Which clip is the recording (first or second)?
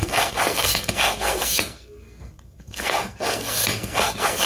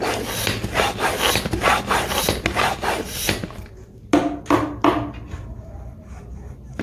second